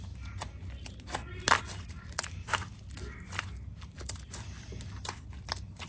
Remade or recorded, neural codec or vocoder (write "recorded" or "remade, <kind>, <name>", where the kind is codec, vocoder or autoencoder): recorded